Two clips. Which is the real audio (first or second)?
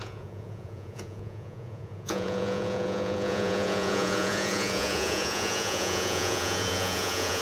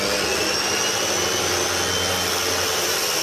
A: second